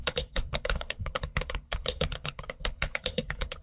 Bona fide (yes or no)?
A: no